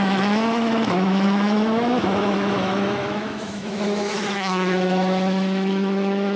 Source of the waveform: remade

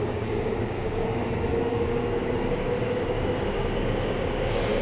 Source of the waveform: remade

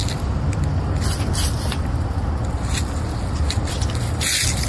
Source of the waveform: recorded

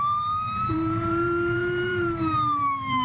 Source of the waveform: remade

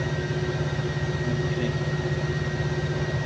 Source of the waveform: recorded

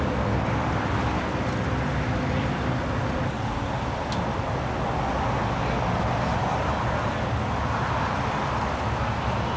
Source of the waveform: recorded